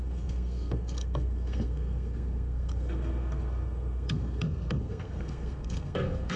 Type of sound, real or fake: fake